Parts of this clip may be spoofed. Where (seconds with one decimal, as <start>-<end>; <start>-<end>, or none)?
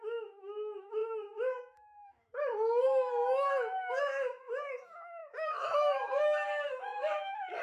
0.0-7.6